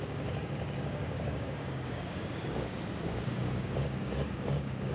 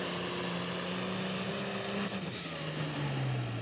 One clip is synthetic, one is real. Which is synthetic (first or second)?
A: first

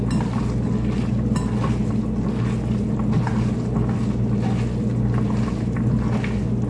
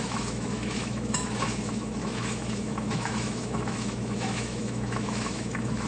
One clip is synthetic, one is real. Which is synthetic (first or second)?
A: second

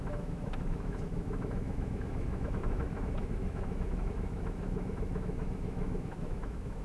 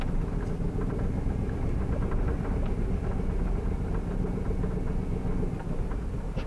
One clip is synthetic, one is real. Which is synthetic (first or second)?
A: first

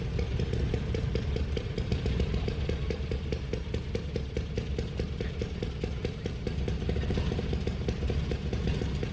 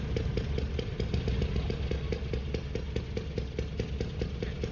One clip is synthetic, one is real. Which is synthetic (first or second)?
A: first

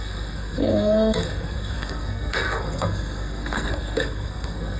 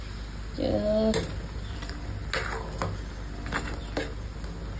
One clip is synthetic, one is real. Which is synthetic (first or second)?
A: first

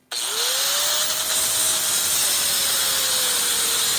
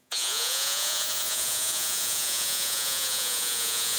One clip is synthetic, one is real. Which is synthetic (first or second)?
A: second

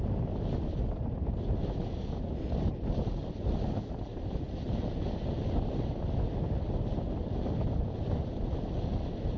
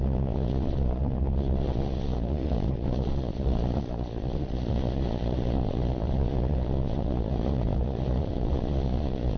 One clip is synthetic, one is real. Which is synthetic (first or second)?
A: second